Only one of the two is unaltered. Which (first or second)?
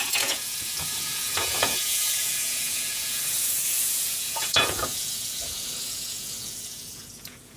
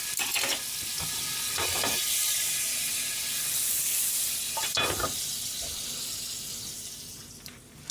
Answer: second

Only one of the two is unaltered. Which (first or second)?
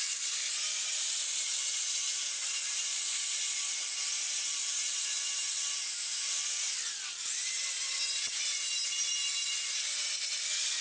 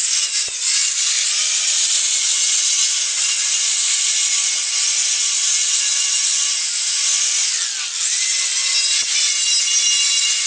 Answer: second